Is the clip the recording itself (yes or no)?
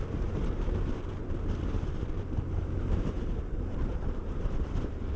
no